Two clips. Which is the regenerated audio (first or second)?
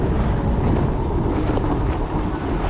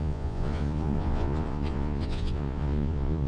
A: second